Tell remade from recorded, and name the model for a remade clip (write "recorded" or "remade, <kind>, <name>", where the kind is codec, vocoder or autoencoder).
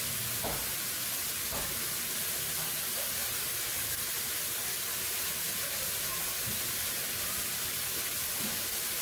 recorded